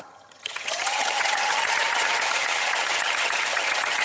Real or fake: fake